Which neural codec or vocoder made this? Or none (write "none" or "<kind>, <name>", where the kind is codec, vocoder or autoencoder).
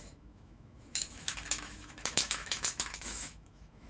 autoencoder, DAC-VAE